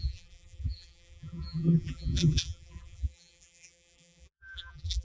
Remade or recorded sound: remade